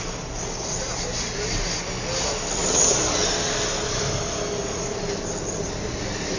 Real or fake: real